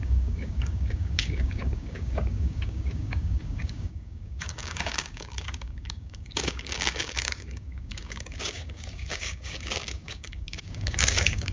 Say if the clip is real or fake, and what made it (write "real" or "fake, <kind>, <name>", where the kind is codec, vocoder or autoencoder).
fake, codec, DAC